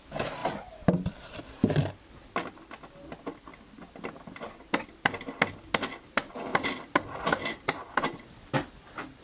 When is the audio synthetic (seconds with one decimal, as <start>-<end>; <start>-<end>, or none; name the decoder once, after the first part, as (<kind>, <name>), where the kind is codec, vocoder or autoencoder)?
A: 0.4-1.8 (vocoder, BigVGAN v2); 6.5-9.2